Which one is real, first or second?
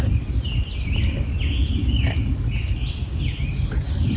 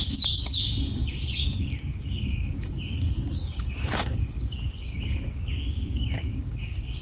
first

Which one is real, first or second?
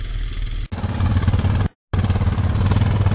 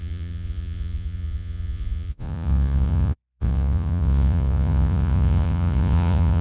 first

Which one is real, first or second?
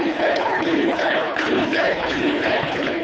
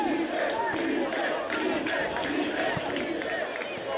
second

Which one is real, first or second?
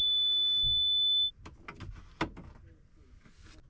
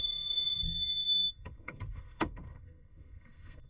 first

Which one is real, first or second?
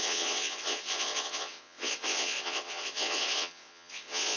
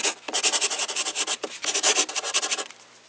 second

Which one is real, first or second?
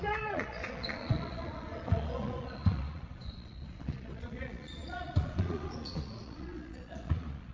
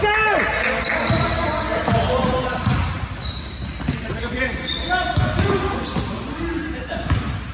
second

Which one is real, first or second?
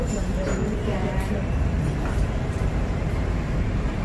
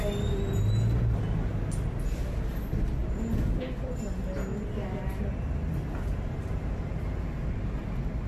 second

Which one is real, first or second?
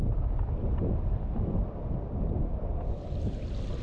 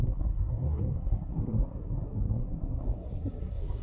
first